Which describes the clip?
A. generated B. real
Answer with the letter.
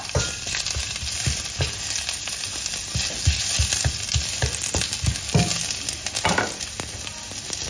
B